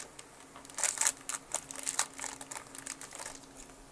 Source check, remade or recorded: recorded